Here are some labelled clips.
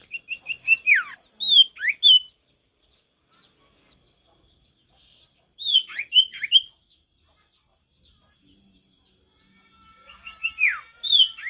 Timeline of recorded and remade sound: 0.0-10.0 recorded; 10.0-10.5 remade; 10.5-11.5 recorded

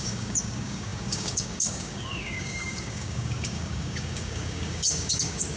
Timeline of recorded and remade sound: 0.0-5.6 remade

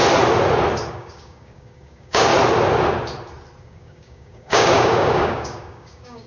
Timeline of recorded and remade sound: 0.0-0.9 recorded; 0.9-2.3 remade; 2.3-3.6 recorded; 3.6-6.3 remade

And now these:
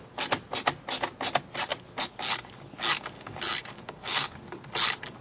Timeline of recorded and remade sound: 0.0-3.6 recorded; 3.6-4.3 remade; 4.3-5.2 recorded

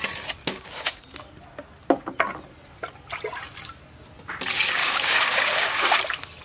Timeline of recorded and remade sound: 0.0-0.4 recorded; 0.4-1.0 remade; 1.0-4.8 recorded; 4.8-6.0 remade; 6.0-6.4 recorded